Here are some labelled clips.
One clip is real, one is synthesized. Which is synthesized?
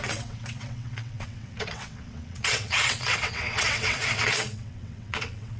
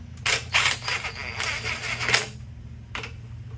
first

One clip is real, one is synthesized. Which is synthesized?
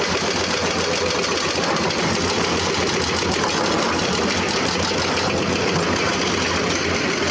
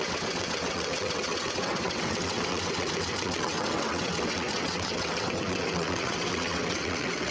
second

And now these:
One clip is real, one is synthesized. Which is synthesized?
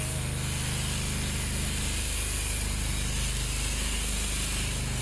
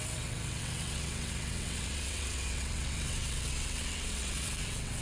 second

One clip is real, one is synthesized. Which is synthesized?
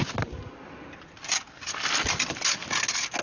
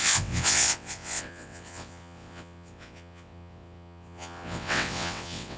second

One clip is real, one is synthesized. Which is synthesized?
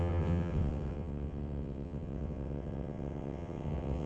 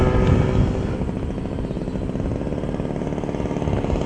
first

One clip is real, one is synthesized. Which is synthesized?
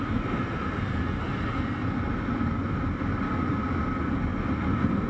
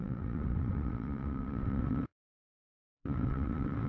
second